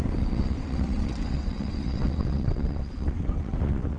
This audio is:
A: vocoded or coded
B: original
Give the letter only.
A